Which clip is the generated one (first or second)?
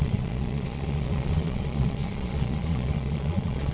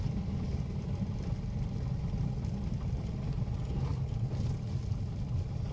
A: first